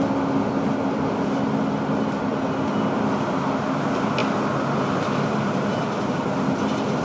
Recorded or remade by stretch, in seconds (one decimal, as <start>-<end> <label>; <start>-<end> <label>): 0.0-7.0 recorded